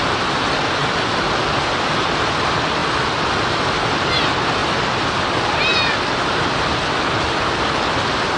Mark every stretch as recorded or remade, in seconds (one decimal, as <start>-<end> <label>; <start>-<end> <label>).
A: 0.0-8.4 recorded